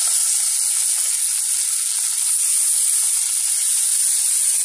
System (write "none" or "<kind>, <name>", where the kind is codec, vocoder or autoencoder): none